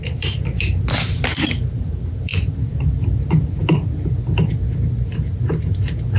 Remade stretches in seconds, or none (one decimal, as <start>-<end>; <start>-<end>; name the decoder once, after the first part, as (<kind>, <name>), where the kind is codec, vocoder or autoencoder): 0.0-3.6 (vocoder, BigVGAN v2); 5.5-6.2